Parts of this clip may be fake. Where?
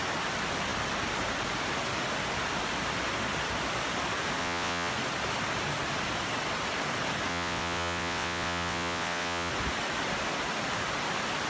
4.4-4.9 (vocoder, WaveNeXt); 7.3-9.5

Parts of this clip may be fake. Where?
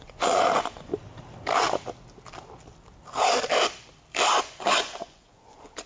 0.0-0.9 (vocoder, Vocos); 4.4-5.9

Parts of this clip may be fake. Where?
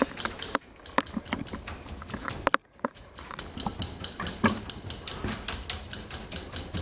2.6-3.4 (vocoder, Vocos)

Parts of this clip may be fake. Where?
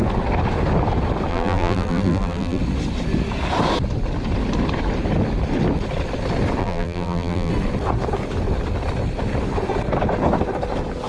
1.3-2.6 (vocoder, BigVGAN v2); 6.6-7.5